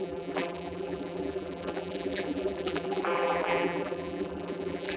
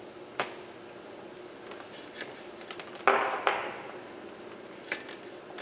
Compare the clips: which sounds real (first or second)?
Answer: second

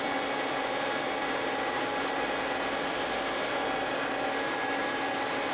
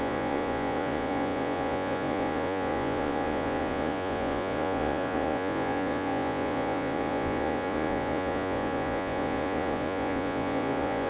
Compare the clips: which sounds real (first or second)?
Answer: first